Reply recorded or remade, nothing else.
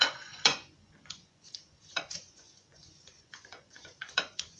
remade